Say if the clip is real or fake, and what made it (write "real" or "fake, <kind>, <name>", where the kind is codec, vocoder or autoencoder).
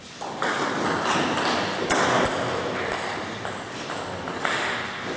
real